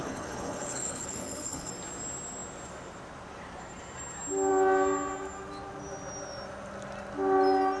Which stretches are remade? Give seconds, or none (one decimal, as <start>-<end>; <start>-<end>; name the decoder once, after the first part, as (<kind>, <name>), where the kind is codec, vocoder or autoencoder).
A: 0.0-1.7 (codec, HILCodec)